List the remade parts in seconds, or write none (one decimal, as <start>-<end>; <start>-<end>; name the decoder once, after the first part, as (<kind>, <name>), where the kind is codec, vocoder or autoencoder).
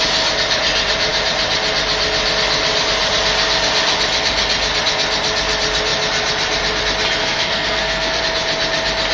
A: 7.2-8.2 (codec, SNAC)